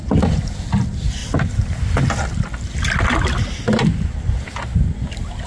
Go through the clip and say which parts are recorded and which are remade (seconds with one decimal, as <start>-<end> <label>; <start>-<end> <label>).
0.0-5.5 recorded